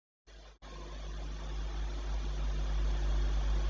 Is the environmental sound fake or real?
real